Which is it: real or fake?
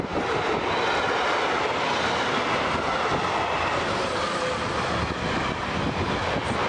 real